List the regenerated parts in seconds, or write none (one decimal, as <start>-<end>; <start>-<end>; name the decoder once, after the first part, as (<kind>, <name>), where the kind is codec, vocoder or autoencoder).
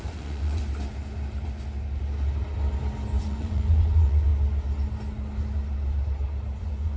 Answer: 0.0-0.6 (vocoder, Vocos); 3.2-4.3; 6.6-7.0